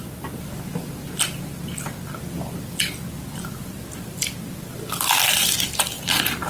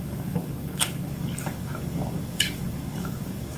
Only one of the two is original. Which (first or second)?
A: first